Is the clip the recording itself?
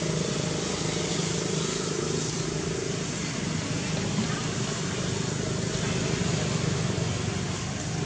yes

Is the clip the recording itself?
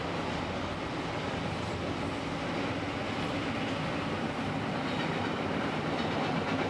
yes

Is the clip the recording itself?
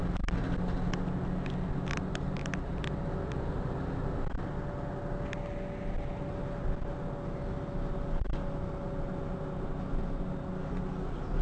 yes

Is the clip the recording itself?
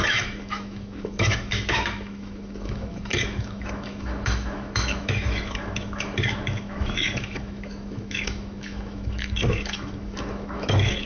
no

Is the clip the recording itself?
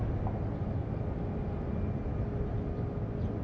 yes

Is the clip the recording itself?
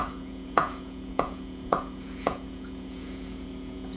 no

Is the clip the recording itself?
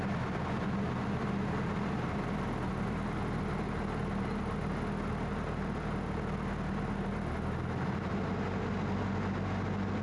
yes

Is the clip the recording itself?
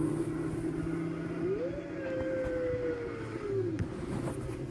yes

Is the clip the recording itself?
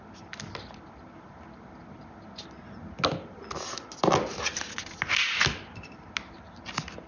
yes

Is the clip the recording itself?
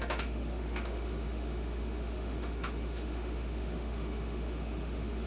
no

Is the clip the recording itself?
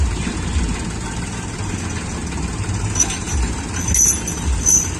yes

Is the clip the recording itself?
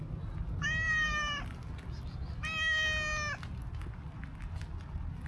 yes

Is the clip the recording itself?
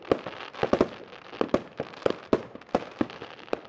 yes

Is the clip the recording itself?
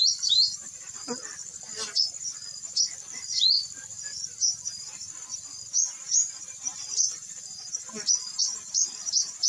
no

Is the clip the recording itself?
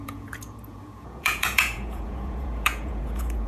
no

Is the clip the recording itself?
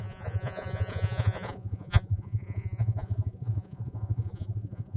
no